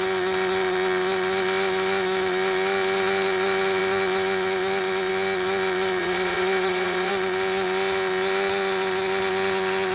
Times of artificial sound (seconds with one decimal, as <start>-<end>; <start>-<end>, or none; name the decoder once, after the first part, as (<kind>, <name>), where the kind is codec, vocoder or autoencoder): 6.0-7.1 (vocoder, Vocos)